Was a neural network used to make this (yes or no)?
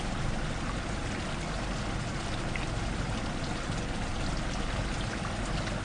no